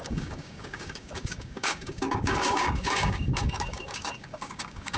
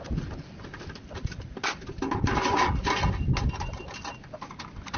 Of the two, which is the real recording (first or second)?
second